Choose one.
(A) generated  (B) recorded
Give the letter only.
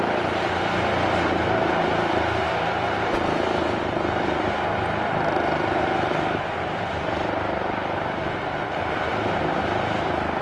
A